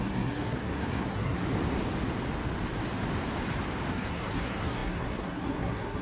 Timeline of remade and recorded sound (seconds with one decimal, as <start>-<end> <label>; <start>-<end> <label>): 0.0-1.4 remade; 1.4-3.9 recorded; 3.9-6.0 remade